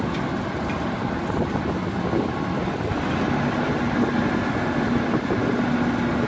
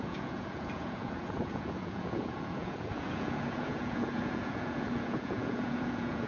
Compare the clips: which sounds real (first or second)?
first